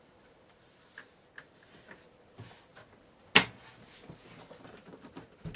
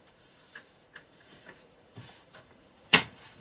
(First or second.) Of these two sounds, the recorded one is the first